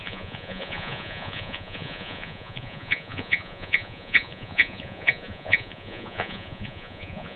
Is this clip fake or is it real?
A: fake